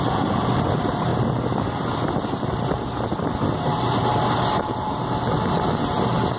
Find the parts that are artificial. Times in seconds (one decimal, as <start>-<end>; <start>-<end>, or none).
none